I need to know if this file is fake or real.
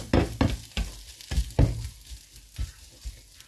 real